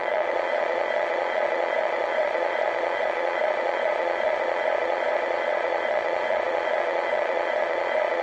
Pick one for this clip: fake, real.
fake